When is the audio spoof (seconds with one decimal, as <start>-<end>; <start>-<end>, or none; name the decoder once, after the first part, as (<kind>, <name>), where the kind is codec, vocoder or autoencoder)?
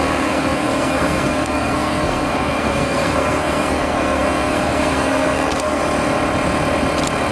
0.0-5.8 (codec, SNAC)